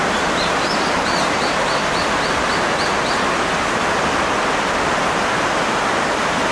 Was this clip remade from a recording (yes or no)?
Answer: no